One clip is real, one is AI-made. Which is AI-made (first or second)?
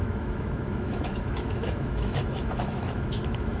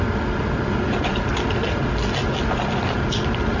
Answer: first